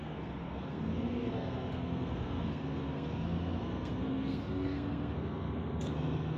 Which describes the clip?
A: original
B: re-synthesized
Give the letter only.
B